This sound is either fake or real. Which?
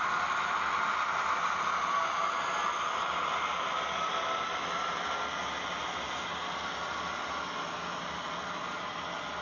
real